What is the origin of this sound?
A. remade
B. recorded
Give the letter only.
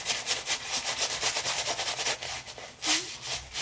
B